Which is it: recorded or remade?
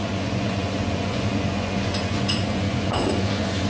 remade